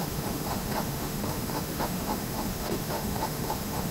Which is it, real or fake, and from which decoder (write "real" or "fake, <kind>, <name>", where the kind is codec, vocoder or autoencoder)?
fake, autoencoder, DAC-VAE